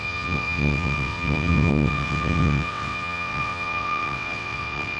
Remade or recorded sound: remade